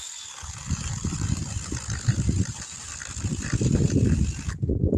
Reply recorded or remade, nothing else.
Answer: recorded